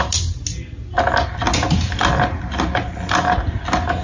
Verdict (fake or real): real